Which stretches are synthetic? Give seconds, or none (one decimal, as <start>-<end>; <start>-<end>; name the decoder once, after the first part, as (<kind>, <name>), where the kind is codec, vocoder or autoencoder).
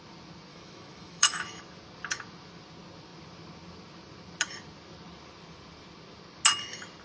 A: 0.5-1.6 (autoencoder, DAC-VAE)